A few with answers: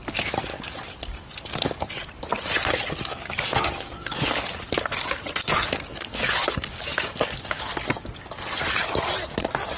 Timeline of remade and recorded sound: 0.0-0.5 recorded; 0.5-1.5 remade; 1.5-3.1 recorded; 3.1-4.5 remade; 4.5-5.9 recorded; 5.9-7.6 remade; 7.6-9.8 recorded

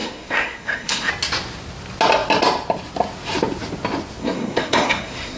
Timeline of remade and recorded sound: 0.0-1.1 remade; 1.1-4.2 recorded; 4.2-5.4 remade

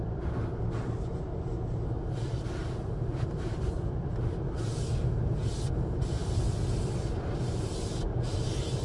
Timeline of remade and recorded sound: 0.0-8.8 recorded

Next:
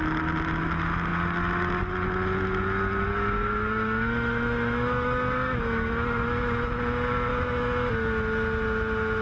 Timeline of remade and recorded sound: 0.0-3.1 recorded; 3.1-6.8 remade; 6.8-7.3 recorded; 7.3-7.9 remade; 7.9-9.2 recorded

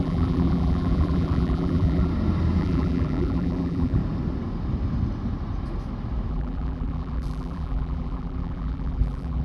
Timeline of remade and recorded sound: 0.0-2.1 remade; 2.1-2.6 recorded; 2.6-4.0 remade; 4.0-6.3 recorded; 6.3-9.4 remade

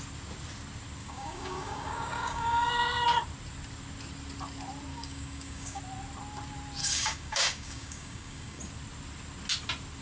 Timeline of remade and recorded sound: 0.0-1.0 recorded; 1.0-2.7 remade; 2.7-4.9 recorded; 4.9-5.8 remade; 5.8-6.8 recorded; 6.8-8.6 remade; 8.6-10.0 recorded

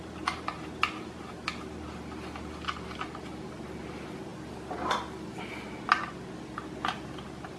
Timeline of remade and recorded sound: 0.0-7.6 recorded

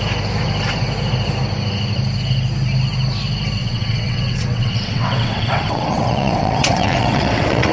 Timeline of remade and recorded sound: 0.0-3.6 recorded; 3.6-7.7 remade